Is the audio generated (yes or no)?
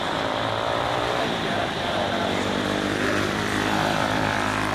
yes